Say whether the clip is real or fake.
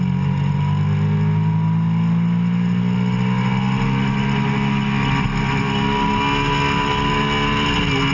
real